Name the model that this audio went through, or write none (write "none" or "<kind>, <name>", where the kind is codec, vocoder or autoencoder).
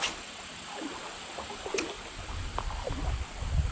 none